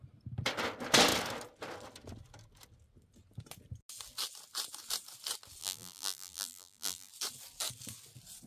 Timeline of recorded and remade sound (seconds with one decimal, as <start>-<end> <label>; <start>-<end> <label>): 0.0-5.6 recorded; 5.6-7.1 remade; 7.1-8.5 recorded